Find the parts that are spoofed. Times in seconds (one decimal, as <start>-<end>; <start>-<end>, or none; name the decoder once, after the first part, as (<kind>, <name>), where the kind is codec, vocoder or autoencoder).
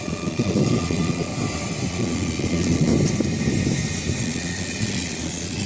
0.0-1.3 (vocoder, Vocos); 1.9-2.9; 4.2-5.7